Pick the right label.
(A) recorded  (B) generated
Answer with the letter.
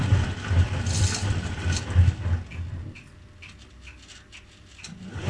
A